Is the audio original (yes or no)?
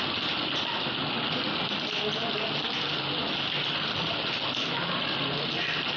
yes